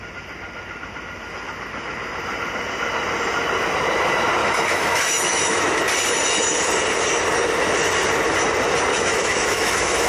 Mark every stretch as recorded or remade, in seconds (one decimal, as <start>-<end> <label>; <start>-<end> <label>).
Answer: 0.0-4.4 recorded; 4.4-5.8 remade; 5.8-8.9 recorded; 8.9-10.1 remade